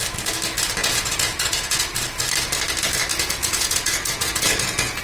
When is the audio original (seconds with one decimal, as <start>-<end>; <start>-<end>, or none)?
0.0-0.8; 1.9-3.1